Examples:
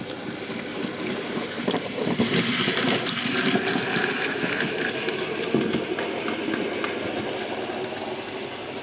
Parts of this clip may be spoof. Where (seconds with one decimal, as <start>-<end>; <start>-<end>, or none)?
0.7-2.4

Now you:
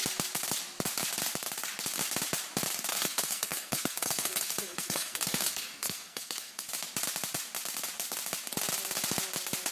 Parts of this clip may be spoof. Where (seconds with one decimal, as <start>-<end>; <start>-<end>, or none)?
2.9-6.7

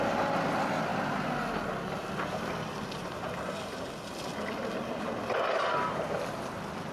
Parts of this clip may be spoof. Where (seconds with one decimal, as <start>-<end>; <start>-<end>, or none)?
0.9-1.7